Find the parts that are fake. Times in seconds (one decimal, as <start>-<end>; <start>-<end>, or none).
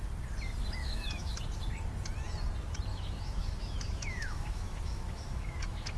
0.8-1.4; 2.9-6.0